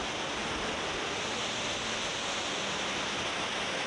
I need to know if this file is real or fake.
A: real